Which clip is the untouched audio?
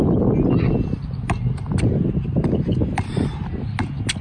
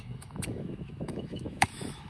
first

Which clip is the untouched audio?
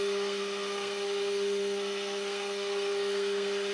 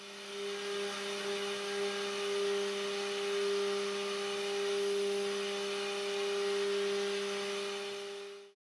second